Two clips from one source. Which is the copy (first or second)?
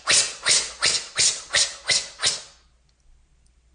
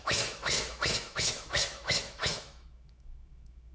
second